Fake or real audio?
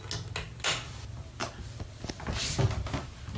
real